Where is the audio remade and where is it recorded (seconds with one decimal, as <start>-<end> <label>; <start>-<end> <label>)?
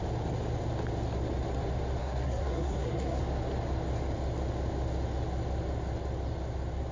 0.0-2.0 recorded; 2.0-3.2 remade; 3.2-6.9 recorded